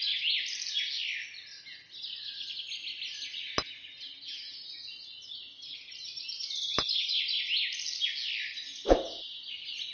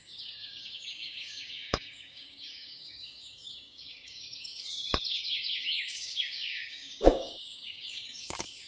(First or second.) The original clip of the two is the first